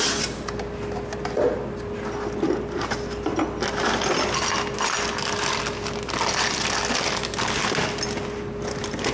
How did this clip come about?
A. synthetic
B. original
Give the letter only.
B